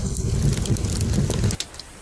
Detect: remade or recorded recorded